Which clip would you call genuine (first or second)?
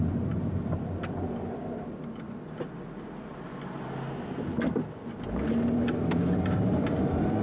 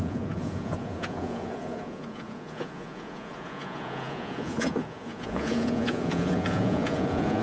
first